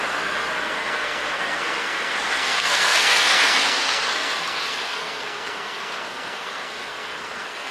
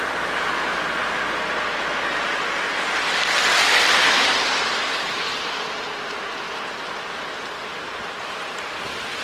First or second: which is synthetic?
first